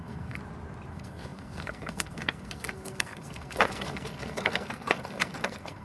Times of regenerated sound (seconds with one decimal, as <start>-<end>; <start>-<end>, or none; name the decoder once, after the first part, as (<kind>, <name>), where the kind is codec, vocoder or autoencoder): 0.0-0.4 (codec, SNAC); 0.9-5.8